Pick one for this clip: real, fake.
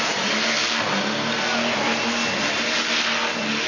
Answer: real